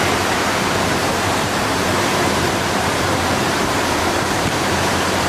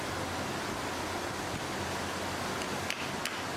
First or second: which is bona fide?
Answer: second